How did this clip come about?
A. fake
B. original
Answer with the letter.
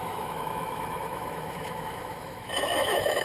A